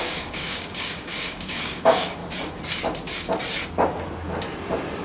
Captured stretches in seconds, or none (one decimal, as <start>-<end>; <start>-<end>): 2.2-5.0